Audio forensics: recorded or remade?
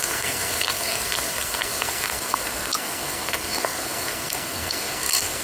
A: remade